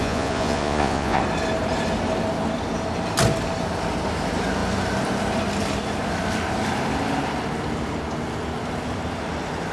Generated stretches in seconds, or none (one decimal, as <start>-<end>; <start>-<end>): 0.0-1.2

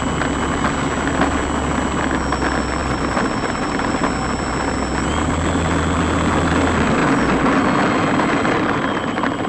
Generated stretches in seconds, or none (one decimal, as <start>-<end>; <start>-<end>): 2.8-3.9